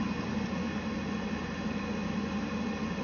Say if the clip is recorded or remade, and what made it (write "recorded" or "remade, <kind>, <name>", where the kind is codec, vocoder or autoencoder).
recorded